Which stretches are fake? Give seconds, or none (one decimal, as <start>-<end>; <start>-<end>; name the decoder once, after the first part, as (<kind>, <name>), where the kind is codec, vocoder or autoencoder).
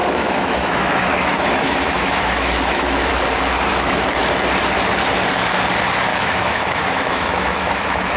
0.0-3.1 (autoencoder, DAC-VAE); 3.7-4.2; 6.1-8.2